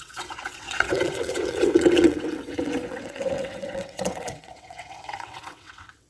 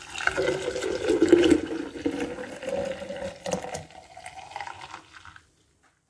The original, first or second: second